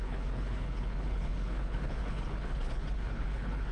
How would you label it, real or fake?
fake